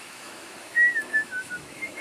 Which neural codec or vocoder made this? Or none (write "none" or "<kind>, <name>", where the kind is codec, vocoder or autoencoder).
autoencoder, DAC-VAE